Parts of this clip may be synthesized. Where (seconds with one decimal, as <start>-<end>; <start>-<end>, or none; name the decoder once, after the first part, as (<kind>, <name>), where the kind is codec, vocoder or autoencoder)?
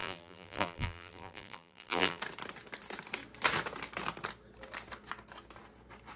0.0-2.2 (vocoder, BigVGAN v2)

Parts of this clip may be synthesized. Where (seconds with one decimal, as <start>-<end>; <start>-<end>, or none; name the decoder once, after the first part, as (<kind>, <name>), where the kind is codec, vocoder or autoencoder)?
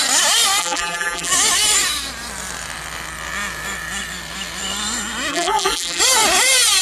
0.6-1.3 (vocoder, BigVGAN v2); 5.3-6.0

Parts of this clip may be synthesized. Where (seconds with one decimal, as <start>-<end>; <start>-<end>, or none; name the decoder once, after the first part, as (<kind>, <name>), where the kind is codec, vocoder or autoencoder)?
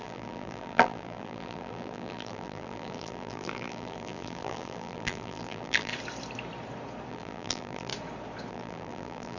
0.0-5.9 (vocoder, BigVGAN v2); 7.1-7.9; 8.5-9.4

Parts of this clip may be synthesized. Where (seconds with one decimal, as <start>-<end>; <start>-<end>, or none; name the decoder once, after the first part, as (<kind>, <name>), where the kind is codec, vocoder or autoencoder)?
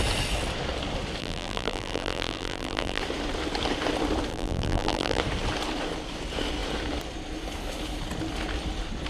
1.2-3.0 (vocoder, BigVGAN v2); 4.3-5.2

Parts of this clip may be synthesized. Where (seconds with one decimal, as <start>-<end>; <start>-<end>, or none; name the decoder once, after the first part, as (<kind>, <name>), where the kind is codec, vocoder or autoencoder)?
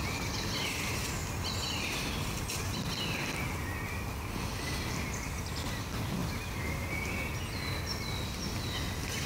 0.0-1.2 (vocoder, BigVGAN v2); 2.2-3.6; 4.1-6.2; 8.0-9.3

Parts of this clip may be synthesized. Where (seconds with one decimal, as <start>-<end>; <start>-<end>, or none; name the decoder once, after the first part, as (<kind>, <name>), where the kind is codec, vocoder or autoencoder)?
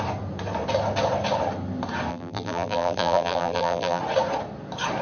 2.1-4.0 (vocoder, BigVGAN v2)